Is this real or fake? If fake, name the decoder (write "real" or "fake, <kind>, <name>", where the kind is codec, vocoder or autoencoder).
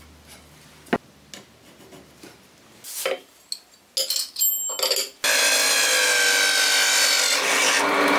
real